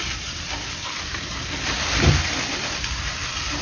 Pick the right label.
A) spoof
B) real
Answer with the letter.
A